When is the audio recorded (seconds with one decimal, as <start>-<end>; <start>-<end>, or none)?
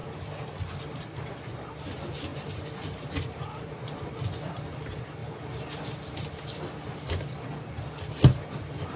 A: 0.0-9.0